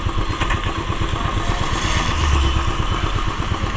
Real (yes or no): yes